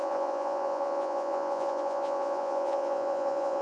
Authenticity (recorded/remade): remade